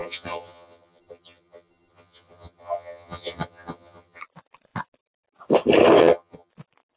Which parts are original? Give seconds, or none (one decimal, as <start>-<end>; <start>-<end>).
4.2-6.0; 6.5-7.0